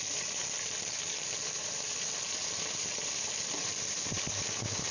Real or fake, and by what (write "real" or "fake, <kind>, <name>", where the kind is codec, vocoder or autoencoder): real